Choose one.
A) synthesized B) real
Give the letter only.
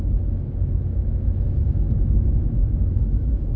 A